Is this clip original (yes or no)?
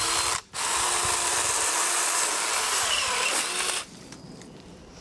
yes